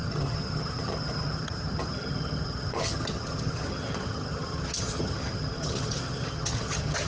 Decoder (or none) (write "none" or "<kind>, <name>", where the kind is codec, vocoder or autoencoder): vocoder, HiFi-GAN